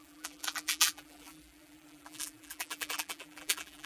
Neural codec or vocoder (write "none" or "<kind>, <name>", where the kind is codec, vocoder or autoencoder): vocoder, BigVGAN v2